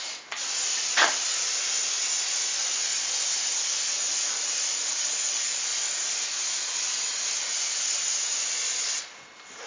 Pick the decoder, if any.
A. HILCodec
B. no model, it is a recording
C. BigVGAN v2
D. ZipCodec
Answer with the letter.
B